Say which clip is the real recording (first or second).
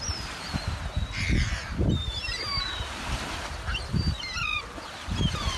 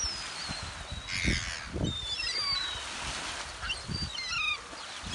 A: second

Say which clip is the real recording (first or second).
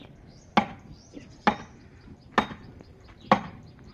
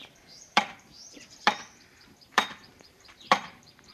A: first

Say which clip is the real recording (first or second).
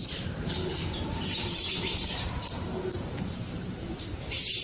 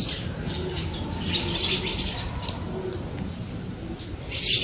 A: second